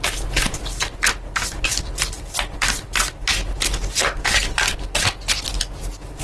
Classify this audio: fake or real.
real